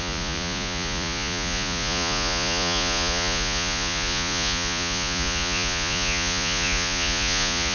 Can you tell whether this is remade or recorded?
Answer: remade